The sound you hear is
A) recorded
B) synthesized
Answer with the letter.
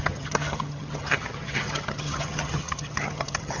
B